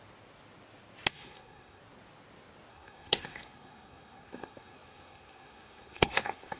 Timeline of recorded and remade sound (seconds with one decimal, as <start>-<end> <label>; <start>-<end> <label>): 0.0-1.1 recorded; 1.1-1.8 remade; 1.8-2.7 recorded; 2.7-6.6 remade